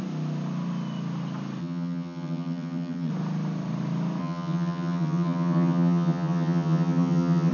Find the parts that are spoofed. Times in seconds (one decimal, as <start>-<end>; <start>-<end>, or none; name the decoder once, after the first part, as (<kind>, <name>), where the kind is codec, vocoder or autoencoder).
1.6-3.1 (vocoder, HiFi-GAN); 4.2-7.5